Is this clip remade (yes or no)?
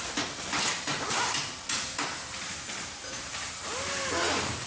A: no